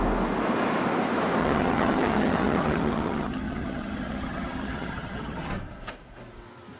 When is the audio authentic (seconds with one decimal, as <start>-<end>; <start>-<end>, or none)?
0.0-1.4; 5.5-6.8